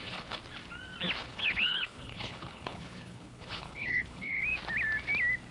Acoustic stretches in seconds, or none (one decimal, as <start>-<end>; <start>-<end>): 0.4-1.2; 4.4-5.5